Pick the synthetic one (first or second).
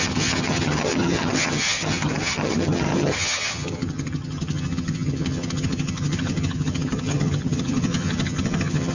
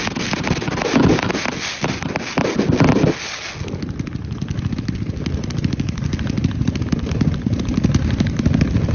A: first